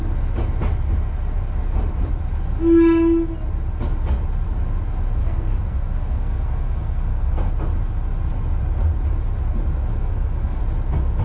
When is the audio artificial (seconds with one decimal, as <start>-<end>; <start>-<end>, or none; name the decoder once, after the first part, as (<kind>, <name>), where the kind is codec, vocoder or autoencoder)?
5.2-7.5 (codec, SNAC); 10.0-10.6